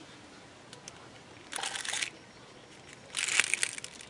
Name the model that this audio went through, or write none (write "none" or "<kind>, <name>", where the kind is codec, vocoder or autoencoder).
none